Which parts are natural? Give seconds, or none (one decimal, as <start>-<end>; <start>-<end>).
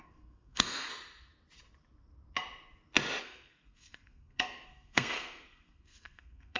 0.9-3.2